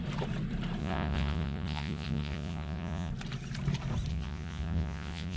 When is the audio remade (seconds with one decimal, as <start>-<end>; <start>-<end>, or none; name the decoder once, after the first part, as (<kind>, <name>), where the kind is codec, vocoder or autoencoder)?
0.8-3.1 (vocoder, Vocos); 4.1-5.4